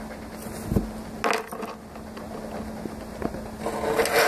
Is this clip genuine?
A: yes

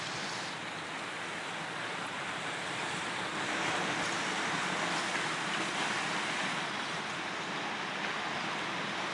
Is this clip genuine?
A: yes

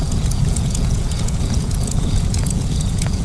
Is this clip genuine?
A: no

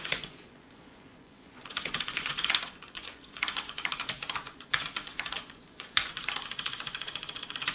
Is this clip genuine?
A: no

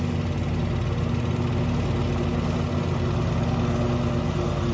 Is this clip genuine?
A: yes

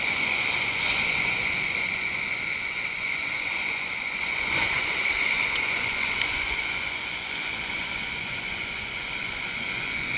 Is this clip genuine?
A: no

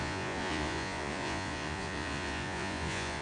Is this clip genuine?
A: no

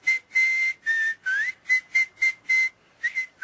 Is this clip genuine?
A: yes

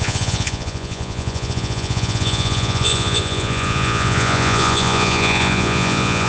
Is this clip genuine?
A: no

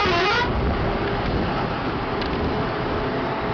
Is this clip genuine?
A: yes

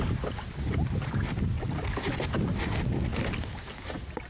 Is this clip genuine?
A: yes